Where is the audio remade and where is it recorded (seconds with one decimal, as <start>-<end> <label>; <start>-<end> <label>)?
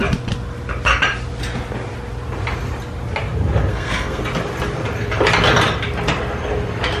0.0-3.7 recorded; 3.7-4.2 remade; 4.2-7.0 recorded